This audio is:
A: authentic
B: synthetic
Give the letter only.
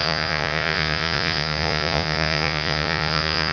B